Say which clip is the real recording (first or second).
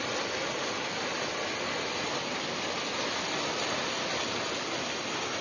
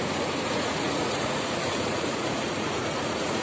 first